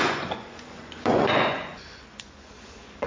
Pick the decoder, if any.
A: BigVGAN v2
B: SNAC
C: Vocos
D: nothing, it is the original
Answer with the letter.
C